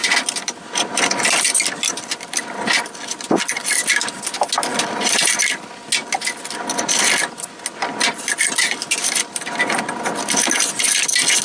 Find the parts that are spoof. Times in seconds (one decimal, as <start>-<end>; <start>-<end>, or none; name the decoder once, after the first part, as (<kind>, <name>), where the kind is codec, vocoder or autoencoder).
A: 4.7-5.6 (vocoder, BigVGAN v2)